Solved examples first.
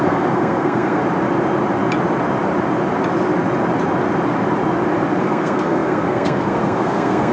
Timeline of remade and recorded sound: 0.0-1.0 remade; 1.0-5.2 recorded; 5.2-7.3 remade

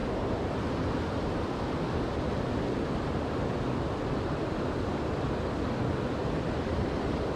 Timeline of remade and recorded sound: 0.0-6.2 recorded; 6.2-7.4 remade

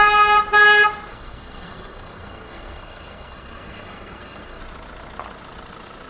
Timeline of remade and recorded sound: 0.0-1.1 recorded; 1.1-4.6 remade; 4.6-6.1 recorded

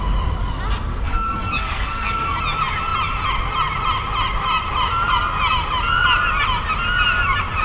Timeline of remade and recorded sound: 0.0-0.9 recorded; 0.9-2.4 remade; 2.4-7.6 recorded

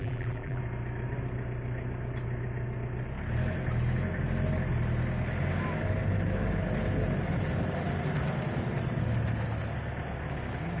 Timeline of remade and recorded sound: 0.0-0.6 remade; 0.6-10.8 recorded

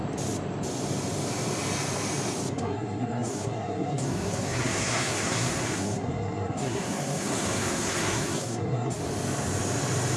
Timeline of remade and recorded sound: 0.0-2.5 recorded; 2.5-9.0 remade; 9.0-10.2 recorded